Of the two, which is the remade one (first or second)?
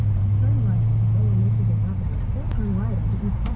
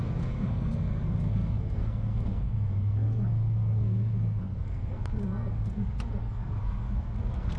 second